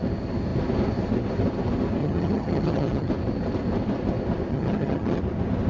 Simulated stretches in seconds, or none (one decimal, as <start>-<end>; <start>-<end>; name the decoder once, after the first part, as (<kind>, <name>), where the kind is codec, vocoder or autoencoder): 2.0-3.1 (vocoder, HiFi-GAN); 4.5-5.2